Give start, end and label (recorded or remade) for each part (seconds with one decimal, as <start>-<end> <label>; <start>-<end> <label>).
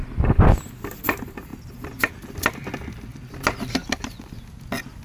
0.0-5.0 recorded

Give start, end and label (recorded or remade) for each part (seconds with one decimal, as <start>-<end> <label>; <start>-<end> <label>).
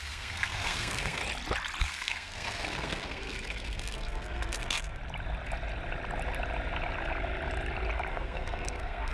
0.0-1.2 remade; 1.2-1.8 recorded; 1.8-5.0 remade; 5.0-8.1 recorded; 8.1-9.1 remade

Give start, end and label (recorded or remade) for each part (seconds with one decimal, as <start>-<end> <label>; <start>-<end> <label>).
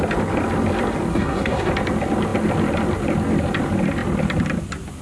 0.0-1.1 recorded; 1.1-1.7 remade; 1.7-5.0 recorded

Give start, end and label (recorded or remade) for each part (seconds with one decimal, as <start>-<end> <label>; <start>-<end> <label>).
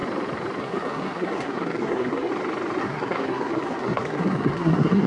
0.0-0.6 recorded; 0.6-2.3 remade; 2.3-2.8 recorded; 2.8-5.1 remade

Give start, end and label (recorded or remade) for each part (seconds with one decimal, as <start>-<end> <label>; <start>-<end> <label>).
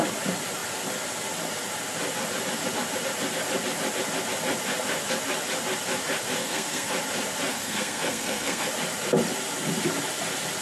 0.0-6.4 recorded; 6.4-6.9 remade; 6.9-7.5 recorded; 7.5-8.7 remade; 8.7-10.6 recorded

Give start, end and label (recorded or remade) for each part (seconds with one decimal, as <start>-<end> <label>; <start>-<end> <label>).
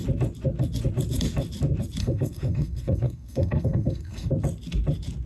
0.0-2.0 recorded; 2.0-4.3 remade; 4.3-5.3 recorded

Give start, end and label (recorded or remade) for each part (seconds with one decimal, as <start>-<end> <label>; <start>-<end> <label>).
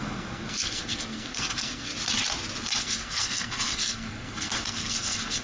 0.0-1.9 remade; 1.9-2.8 recorded; 2.8-5.4 remade